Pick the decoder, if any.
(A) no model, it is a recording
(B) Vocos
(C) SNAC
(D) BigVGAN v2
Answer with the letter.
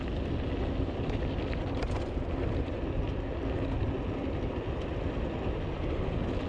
A